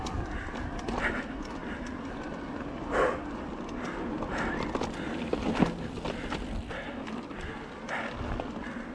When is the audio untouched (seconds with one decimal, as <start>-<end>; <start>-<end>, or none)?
0.0-8.9